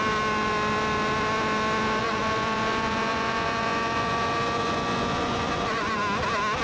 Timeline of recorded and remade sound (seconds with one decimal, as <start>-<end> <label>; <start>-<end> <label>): 0.0-2.0 recorded; 2.0-6.0 remade; 6.0-6.6 recorded